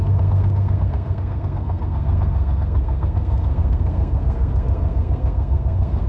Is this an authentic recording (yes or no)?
no